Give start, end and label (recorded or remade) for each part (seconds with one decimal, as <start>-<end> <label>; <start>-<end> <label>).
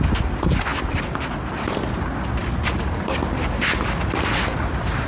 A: 0.0-5.1 recorded